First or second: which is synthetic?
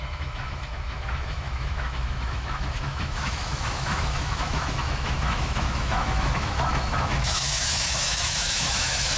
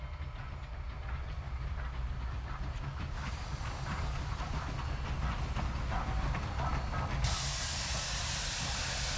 first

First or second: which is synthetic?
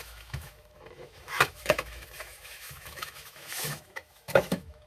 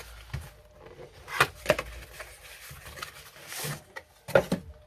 first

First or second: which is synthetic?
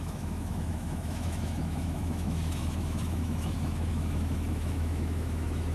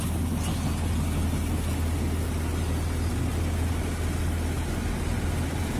first